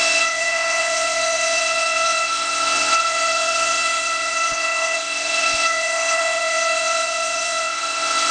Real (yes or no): no